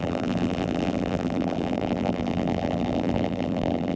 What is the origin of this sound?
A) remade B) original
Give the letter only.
A